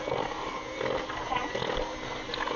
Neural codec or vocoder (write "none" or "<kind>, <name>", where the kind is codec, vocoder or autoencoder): none